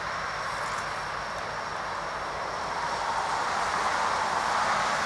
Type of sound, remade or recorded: recorded